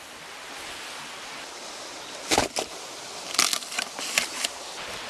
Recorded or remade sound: recorded